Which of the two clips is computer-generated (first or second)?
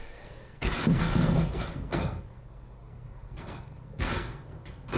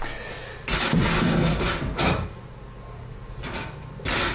first